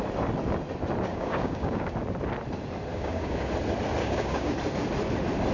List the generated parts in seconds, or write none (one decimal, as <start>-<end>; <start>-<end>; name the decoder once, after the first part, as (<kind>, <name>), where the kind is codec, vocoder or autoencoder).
1.1-1.9 (codec, DAC); 2.9-3.5; 4.0-4.5